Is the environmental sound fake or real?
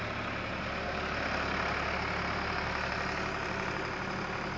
real